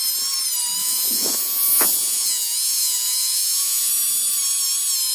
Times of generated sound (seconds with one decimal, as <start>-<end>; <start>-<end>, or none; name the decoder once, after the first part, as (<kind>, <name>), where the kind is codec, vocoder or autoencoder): 0.8-3.9 (vocoder, Vocos)